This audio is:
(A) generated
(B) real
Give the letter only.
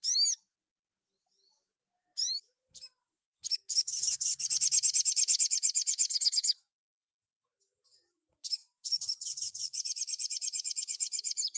A